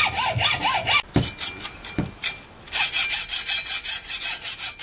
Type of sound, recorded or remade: recorded